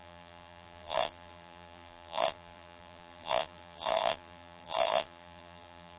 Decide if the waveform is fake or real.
fake